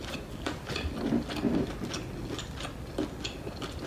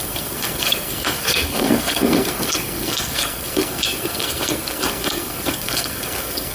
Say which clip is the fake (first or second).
second